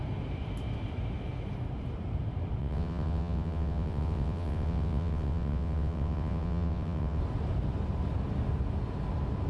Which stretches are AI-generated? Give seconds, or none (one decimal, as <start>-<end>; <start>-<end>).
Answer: 2.6-7.2